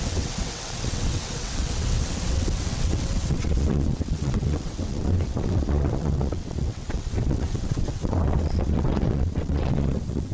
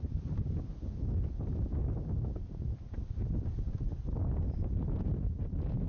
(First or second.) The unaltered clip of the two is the second